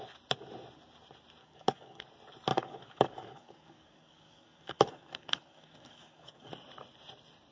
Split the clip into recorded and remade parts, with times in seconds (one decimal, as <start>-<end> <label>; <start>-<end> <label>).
0.0-1.4 recorded; 1.4-2.0 remade; 2.0-2.5 recorded; 2.5-6.5 remade; 6.5-7.5 recorded